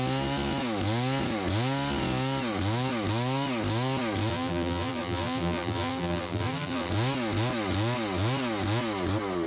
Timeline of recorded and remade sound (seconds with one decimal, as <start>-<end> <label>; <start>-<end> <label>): 0.0-4.3 recorded; 4.3-6.9 remade; 6.9-9.5 recorded